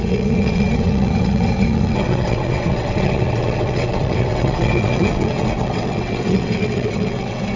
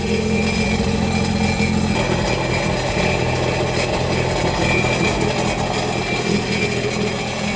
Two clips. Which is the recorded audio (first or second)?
second